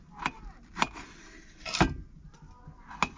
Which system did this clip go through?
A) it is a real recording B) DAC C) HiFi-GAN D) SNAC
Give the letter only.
A